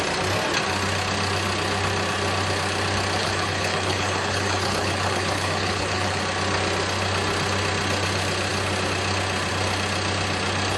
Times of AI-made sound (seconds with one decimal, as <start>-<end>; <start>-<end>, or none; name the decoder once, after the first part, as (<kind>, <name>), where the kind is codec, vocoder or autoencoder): 3.2-6.2 (codec, HILCodec)